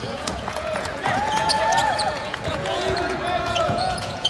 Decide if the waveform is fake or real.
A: fake